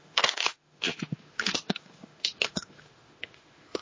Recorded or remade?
remade